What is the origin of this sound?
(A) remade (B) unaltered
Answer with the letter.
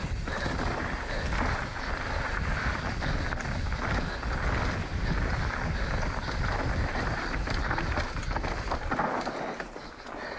B